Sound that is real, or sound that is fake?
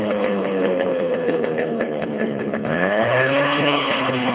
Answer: fake